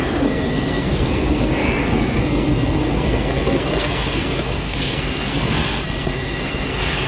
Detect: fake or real fake